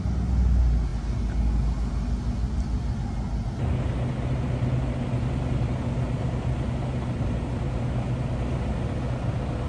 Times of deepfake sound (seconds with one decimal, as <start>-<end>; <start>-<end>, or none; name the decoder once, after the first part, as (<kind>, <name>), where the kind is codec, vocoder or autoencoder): none

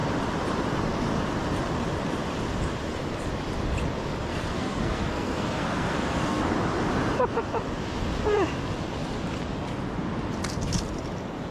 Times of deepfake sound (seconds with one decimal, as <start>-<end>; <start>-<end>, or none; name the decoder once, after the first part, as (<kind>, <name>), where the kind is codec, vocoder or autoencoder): 4.3-6.4 (codec, SNAC)

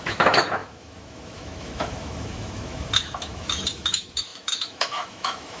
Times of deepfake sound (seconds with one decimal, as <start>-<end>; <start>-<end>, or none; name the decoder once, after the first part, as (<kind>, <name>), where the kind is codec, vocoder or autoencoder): 0.0-5.6 (autoencoder, DAC-VAE)

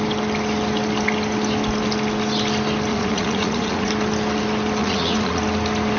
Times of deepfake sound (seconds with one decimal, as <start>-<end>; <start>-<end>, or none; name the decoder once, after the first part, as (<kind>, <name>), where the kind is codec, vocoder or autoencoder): 2.9-3.9 (vocoder, Vocos); 4.8-5.4

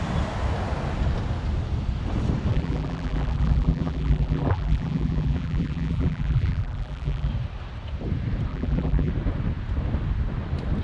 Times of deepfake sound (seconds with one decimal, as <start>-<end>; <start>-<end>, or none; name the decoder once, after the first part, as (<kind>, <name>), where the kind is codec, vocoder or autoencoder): 2.5-7.3 (vocoder, BigVGAN v2); 8.5-9.1